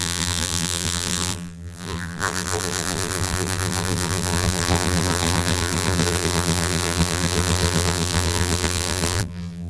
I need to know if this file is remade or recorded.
remade